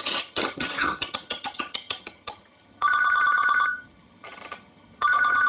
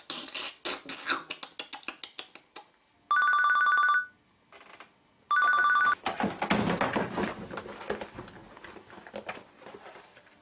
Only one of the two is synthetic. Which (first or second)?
first